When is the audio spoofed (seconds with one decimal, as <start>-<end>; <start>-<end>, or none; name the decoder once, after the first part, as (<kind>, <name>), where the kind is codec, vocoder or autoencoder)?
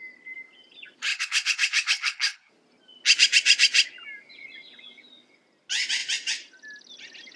1.1-2.5 (codec, HILCodec)